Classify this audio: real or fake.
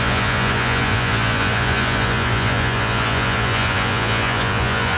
fake